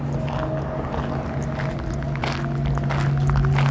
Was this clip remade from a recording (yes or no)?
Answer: no